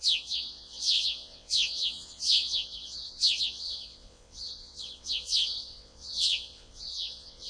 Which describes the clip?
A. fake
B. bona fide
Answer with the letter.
A